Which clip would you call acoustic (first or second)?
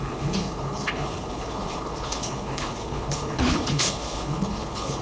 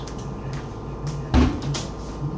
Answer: second